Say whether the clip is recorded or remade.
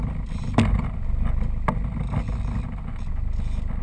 recorded